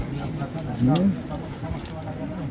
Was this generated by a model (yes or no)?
no